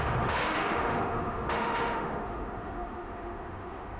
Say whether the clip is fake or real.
fake